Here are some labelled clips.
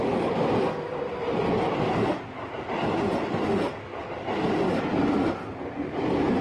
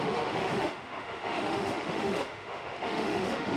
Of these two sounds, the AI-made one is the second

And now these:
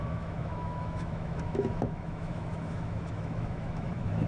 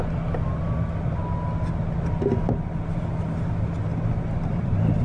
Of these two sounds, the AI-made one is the first